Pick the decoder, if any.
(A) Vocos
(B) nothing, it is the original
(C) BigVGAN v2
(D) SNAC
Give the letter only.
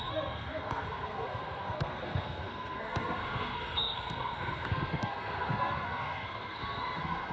D